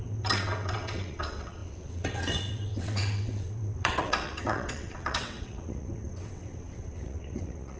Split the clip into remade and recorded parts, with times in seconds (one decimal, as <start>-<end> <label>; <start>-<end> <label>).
0.0-7.8 remade